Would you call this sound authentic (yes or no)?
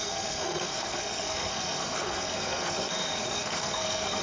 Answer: no